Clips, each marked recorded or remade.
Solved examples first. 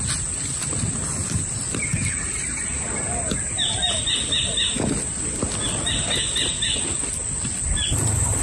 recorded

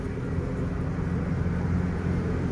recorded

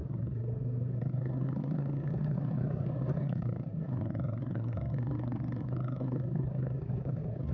remade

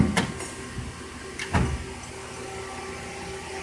recorded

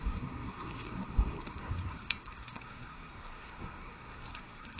remade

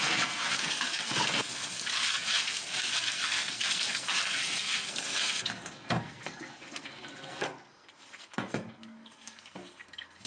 remade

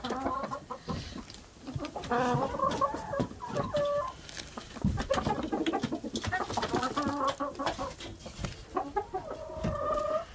recorded